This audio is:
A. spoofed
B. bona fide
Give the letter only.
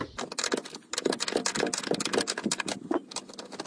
B